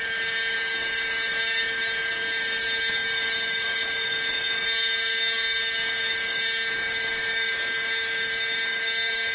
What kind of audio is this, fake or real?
fake